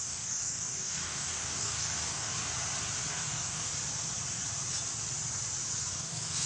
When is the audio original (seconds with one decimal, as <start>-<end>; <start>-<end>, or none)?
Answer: 2.4-3.1; 3.7-5.8